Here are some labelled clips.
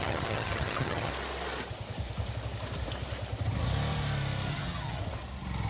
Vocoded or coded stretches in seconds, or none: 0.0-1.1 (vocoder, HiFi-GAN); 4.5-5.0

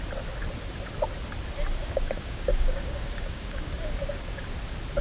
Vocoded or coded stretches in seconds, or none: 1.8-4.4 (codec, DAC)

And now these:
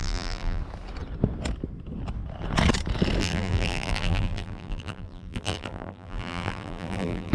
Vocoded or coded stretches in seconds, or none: 0.0-0.6 (vocoder, BigVGAN v2); 3.2-7.3

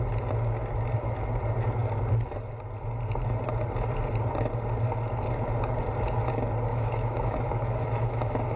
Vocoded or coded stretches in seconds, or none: 6.7-8.6 (autoencoder, DAC-VAE)

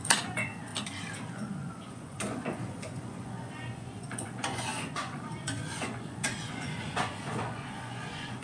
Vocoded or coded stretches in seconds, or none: 0.0-0.7 (vocoder, Vocos); 1.3-8.4

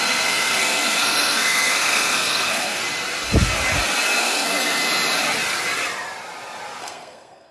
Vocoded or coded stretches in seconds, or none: 0.0-2.8 (codec, SNAC); 4.2-4.8; 6.8-7.5

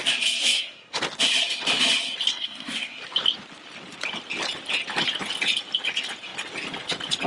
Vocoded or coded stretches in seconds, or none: 0.4-1.0 (codec, SNAC); 2.3-3.0